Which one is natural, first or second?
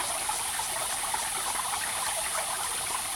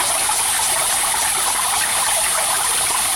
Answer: second